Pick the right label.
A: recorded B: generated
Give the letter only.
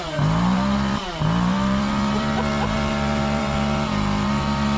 B